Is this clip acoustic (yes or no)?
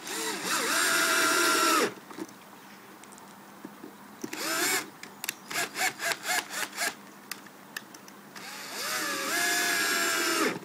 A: yes